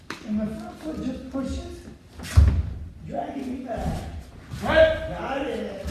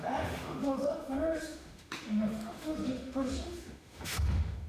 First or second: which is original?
first